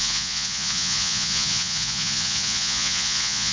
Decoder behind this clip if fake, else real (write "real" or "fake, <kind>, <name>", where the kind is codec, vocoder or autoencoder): fake, vocoder, Vocos